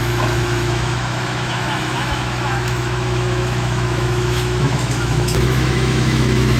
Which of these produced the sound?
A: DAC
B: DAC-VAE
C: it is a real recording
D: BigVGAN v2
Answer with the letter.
B